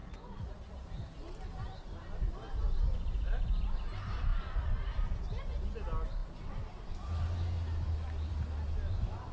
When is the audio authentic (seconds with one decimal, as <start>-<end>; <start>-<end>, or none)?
0.7-9.3